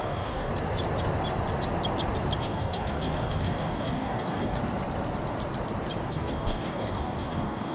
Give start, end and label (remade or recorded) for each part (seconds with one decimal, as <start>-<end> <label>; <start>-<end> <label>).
0.0-0.5 remade; 0.5-2.4 recorded; 2.4-4.6 remade; 4.6-6.1 recorded; 6.1-7.7 remade